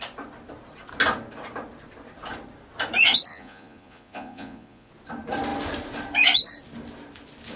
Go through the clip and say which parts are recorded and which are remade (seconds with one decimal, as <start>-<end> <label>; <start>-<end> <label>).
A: 0.0-3.3 recorded; 3.3-4.9 remade; 4.9-7.6 recorded